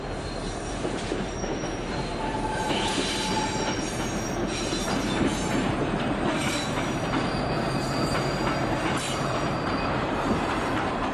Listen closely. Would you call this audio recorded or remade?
remade